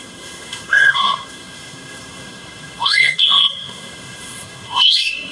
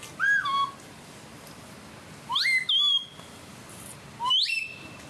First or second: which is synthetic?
first